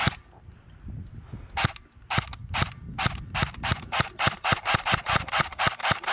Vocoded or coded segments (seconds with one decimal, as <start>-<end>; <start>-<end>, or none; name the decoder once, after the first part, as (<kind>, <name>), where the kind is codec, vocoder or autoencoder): none